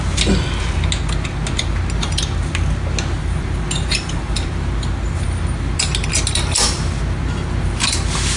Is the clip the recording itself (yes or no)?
yes